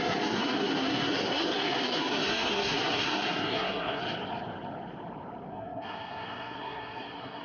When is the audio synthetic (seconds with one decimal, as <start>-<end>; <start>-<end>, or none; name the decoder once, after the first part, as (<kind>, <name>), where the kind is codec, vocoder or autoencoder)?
0.0-4.0 (codec, SNAC); 5.5-7.4